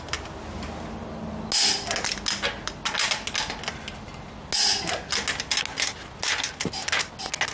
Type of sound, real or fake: real